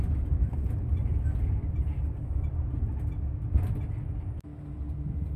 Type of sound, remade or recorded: recorded